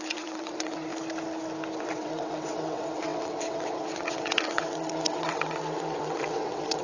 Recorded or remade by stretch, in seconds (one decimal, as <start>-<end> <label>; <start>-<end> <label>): 0.0-0.9 remade; 0.9-1.8 recorded; 1.8-6.8 remade